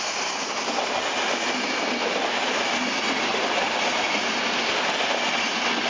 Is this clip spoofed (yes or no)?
no